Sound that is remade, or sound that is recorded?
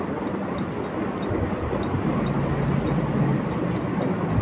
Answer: recorded